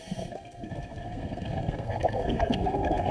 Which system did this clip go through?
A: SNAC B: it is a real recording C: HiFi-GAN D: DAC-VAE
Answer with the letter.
A